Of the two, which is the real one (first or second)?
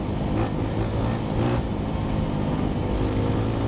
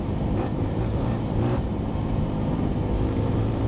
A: first